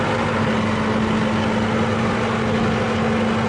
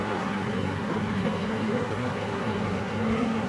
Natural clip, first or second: first